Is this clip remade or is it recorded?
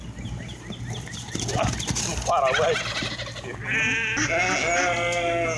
recorded